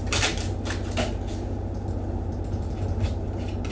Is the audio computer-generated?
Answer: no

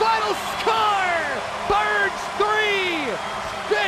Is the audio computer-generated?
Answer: no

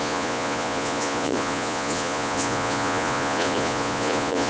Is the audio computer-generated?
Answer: yes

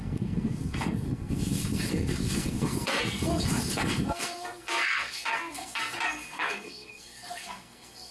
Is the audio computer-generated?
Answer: yes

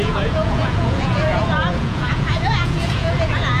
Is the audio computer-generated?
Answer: yes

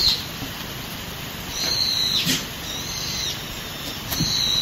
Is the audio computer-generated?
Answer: no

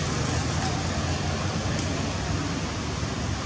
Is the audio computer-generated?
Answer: no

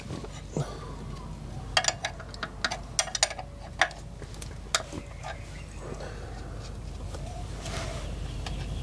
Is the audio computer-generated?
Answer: no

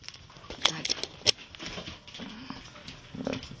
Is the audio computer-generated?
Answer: no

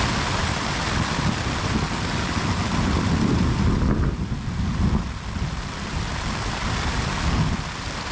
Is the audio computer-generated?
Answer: no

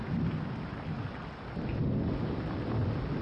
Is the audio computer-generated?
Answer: no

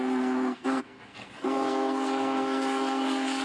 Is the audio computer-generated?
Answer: yes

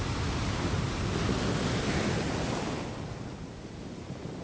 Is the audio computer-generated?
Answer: no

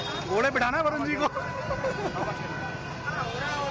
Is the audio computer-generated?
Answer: no